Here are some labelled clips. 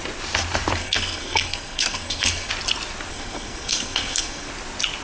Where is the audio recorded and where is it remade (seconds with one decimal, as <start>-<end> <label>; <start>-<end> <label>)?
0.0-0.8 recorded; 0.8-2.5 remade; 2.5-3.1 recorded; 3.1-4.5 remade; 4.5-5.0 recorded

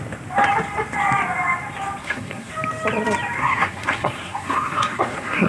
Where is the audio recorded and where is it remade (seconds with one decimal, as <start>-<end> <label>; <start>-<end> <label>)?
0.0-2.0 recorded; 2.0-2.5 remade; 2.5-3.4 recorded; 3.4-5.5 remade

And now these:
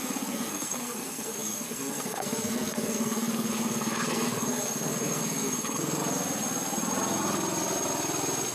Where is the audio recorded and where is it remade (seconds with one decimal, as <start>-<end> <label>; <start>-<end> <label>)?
0.0-6.0 remade; 6.0-8.5 recorded